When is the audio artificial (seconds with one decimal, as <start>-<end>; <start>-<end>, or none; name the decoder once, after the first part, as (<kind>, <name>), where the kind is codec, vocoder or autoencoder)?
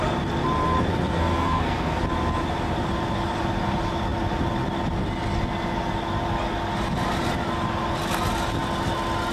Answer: 0.9-2.0 (codec, SNAC)